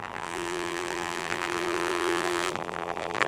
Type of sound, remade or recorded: remade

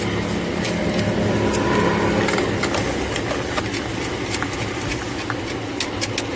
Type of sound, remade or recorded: recorded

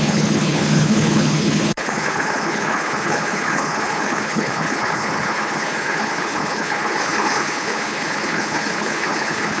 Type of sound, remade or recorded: remade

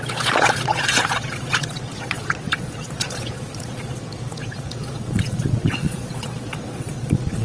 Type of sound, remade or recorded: remade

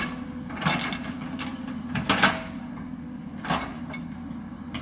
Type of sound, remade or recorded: recorded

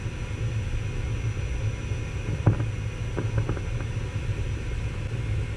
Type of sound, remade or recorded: recorded